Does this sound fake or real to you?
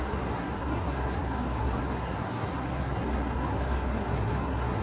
fake